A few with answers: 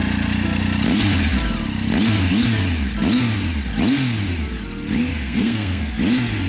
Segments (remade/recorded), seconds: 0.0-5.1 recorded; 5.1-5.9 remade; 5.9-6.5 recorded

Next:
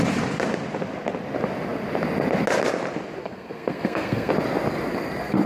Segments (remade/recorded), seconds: 0.0-3.2 recorded; 3.2-4.3 remade; 4.3-5.5 recorded

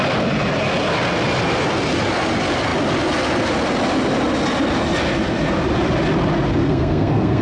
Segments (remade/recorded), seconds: 0.0-6.6 recorded; 6.6-7.4 remade